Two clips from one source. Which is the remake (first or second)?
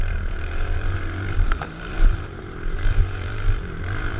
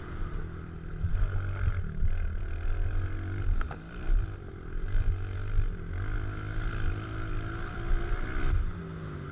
first